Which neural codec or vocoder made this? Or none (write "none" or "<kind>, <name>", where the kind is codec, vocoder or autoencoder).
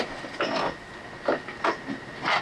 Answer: none